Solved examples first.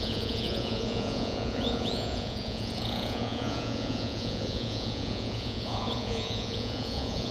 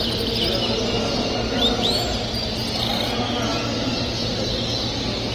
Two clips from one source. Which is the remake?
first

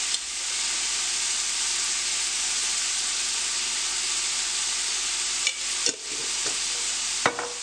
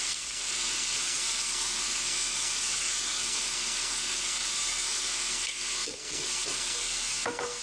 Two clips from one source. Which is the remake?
second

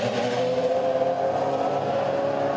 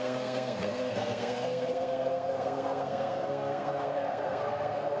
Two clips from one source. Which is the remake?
second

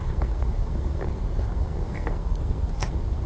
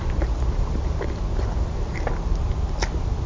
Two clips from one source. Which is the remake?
first